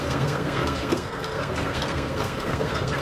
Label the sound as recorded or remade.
remade